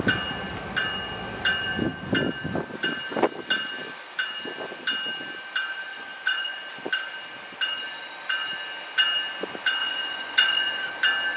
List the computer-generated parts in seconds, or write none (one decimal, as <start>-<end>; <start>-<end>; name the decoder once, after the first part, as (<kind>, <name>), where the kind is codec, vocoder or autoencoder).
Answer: 5.9-6.6 (vocoder, Vocos); 9.8-10.9